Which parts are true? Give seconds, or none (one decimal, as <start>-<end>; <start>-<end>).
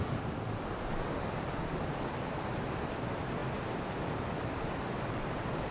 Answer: 0.0-5.7